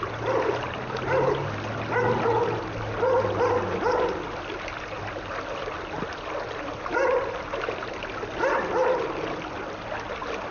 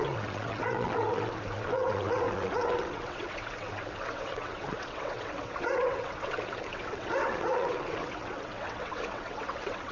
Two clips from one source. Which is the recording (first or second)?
first